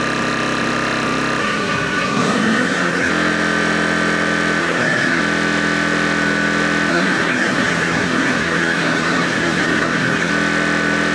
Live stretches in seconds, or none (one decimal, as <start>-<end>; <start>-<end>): 0.0-1.4; 3.1-4.6; 5.2-6.9; 10.3-11.1